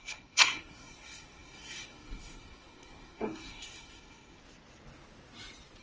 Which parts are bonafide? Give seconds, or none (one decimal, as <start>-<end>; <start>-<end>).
4.4-5.8